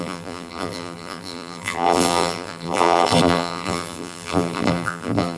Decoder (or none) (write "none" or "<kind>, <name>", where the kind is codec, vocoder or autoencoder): vocoder, BigVGAN v2